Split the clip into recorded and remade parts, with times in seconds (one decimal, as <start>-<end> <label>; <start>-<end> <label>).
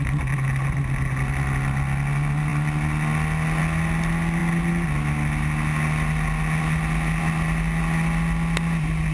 0.0-9.1 recorded